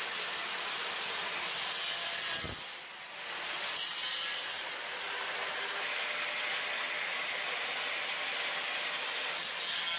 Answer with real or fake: real